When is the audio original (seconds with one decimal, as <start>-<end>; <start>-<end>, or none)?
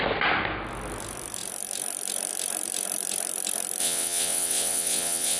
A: 0.0-3.8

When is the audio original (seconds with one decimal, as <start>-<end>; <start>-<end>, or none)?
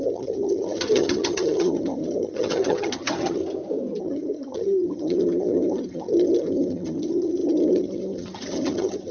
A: 3.4-4.0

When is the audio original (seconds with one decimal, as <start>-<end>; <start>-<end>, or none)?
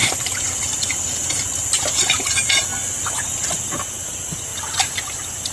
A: 2.7-3.2; 4.5-5.0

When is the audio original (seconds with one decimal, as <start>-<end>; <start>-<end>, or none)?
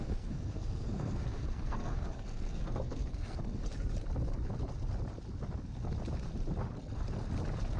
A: 3.6-7.8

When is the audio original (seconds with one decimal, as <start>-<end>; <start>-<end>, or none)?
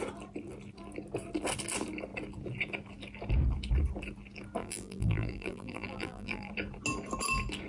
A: 0.0-4.6; 6.5-7.7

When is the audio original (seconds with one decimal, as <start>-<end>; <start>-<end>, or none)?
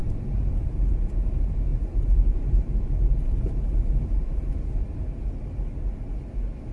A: 0.5-1.7; 2.7-6.7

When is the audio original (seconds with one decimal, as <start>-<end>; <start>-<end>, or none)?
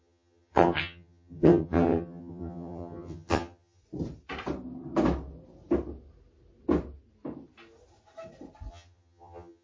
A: 3.8-8.7